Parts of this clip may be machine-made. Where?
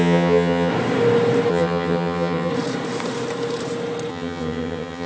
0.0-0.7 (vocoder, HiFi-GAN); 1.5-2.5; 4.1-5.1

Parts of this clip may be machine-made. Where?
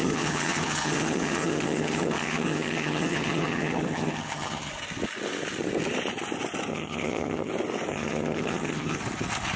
0.0-4.7 (vocoder, HiFi-GAN); 6.7-7.5; 7.9-9.0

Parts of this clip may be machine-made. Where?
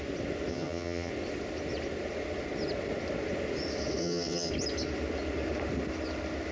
0.5-1.1 (vocoder, HiFi-GAN); 4.0-4.5